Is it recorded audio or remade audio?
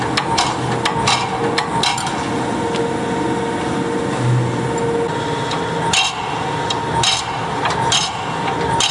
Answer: recorded